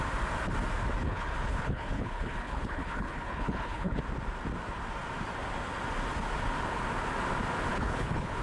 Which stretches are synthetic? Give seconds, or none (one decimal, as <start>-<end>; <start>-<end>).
1.0-4.0; 7.7-8.4